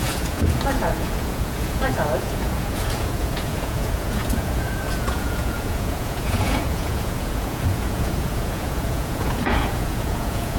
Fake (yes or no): yes